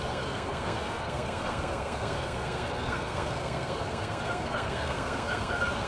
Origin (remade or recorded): remade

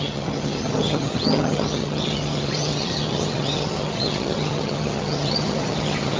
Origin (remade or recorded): remade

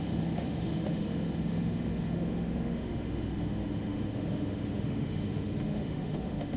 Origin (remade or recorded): remade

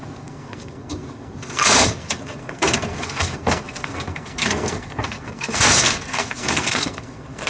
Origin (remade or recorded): remade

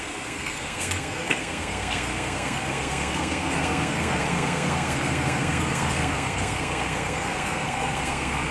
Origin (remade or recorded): remade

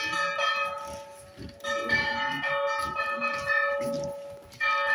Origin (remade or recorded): recorded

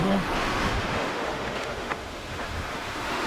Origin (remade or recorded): remade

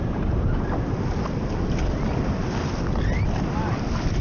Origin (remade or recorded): recorded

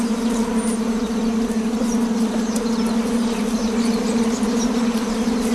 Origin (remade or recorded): recorded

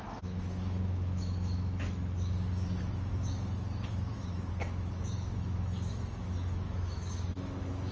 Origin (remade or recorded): remade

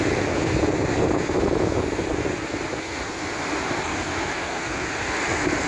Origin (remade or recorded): recorded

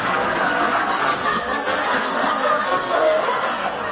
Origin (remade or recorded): remade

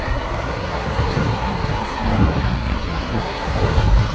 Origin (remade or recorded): remade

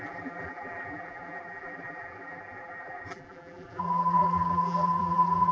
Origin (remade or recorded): remade